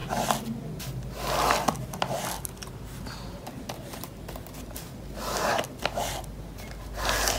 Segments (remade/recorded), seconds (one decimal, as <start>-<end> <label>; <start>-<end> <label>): 0.0-7.4 recorded